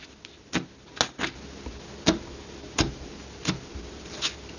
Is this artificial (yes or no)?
no